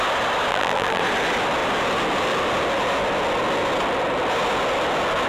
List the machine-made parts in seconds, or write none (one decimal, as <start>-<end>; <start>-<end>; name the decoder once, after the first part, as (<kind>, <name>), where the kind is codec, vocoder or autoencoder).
0.5-1.0 (vocoder, BigVGAN v2)